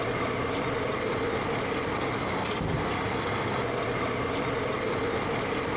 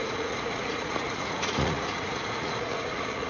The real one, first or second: first